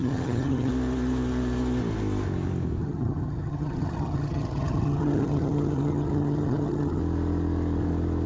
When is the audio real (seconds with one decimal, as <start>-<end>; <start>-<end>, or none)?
0.7-2.8; 7.0-8.3

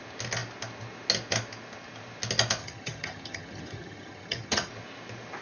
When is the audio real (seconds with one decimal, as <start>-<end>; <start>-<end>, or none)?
0.0-2.6; 4.7-5.4

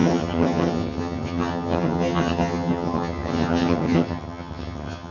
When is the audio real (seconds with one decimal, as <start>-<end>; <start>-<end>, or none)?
none